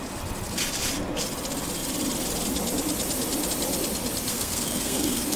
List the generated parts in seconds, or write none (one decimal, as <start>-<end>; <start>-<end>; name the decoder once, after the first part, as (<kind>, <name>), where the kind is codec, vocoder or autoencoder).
4.3-5.4 (codec, SNAC)